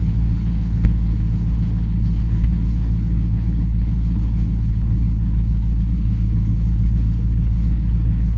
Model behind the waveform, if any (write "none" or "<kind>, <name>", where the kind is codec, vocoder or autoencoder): codec, HILCodec